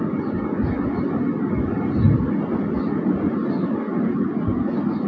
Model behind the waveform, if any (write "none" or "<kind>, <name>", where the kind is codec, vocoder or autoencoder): none